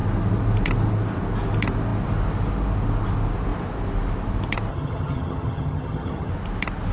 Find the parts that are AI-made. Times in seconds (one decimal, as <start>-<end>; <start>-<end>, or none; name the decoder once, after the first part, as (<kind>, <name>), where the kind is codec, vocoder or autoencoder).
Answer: 4.7-6.3 (vocoder, HiFi-GAN)